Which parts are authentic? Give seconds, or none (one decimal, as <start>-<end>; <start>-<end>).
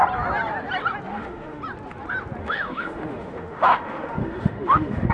0.0-1.1; 1.6-2.4